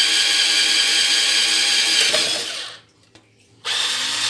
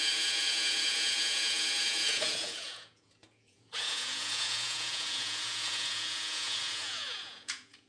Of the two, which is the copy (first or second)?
second